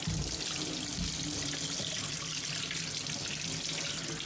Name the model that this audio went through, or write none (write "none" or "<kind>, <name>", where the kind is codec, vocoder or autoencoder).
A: none